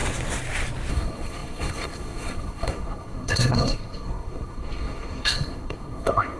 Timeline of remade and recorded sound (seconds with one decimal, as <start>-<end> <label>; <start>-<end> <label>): 0.0-0.9 recorded; 0.9-6.4 remade